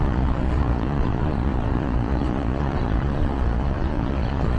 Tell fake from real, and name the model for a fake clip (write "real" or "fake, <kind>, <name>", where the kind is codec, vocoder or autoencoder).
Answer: fake, vocoder, Vocos